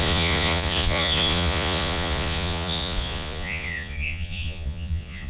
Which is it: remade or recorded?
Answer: remade